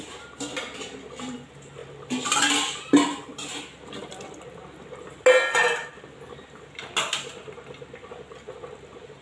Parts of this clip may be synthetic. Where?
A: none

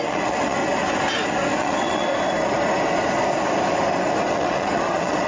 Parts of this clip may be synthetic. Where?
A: 0.0-0.6 (vocoder, WaveNeXt); 1.6-2.1; 4.3-5.3